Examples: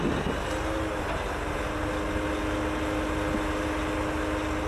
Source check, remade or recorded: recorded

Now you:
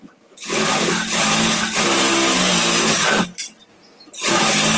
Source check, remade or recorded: recorded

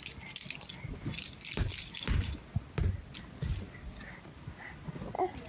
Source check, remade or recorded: recorded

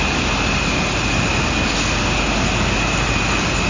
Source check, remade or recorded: recorded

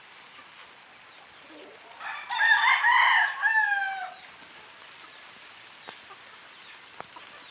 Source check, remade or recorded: recorded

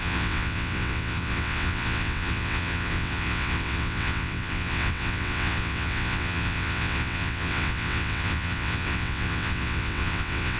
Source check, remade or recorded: remade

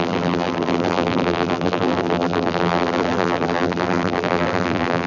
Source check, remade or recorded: remade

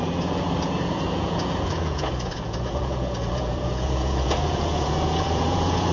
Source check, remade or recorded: remade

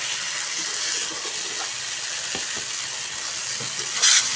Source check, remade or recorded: recorded